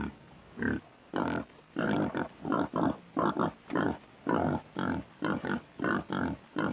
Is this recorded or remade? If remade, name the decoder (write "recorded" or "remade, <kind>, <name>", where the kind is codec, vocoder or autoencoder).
recorded